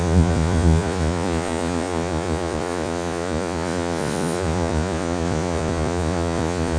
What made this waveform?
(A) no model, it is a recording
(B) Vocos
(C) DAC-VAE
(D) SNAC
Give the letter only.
B